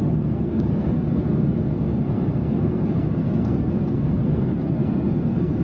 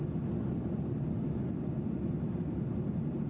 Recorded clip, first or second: second